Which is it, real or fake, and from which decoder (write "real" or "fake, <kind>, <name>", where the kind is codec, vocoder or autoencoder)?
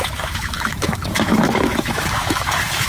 fake, autoencoder, DAC-VAE